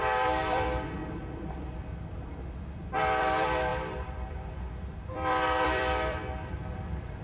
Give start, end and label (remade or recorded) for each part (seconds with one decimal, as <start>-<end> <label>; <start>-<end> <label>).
0.0-1.0 remade; 1.0-2.6 recorded; 2.6-7.2 remade